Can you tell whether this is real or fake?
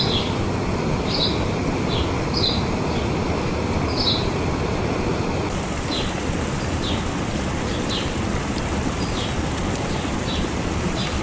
real